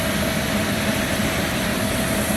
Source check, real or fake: real